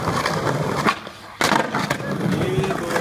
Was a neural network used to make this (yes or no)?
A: no